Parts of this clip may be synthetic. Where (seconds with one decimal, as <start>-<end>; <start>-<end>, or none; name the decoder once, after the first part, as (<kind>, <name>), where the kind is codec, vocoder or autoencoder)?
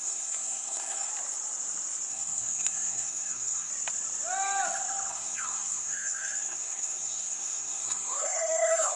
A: 0.0-1.1 (codec, SNAC); 2.1-3.7; 5.1-9.0